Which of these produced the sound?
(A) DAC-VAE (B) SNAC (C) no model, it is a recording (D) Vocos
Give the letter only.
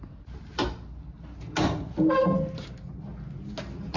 C